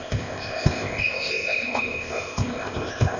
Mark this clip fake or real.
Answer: fake